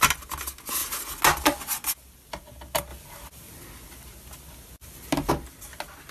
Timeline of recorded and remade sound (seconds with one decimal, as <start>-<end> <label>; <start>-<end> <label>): 0.0-6.1 recorded